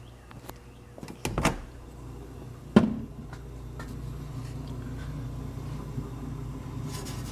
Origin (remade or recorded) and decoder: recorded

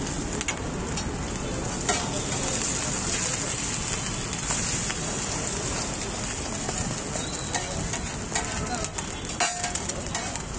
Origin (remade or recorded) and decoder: recorded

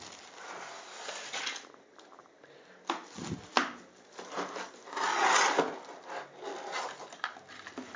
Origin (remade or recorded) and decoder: recorded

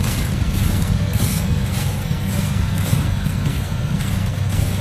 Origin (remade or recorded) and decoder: remade, codec, SNAC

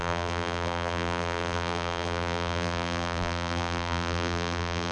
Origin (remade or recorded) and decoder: remade, vocoder, BigVGAN v2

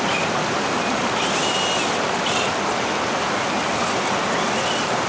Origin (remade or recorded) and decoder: recorded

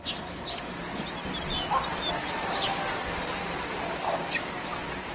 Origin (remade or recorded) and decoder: recorded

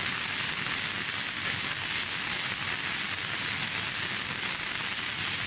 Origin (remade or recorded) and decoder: recorded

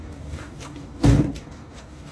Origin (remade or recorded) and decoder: remade, codec, DAC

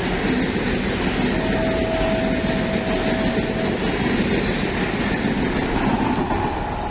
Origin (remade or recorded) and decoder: recorded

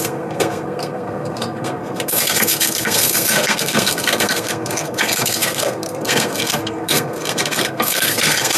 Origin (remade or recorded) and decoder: remade, codec, SNAC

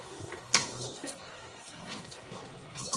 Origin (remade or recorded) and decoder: remade, codec, SNAC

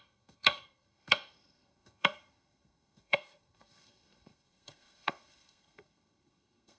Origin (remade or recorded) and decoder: remade, codec, SNAC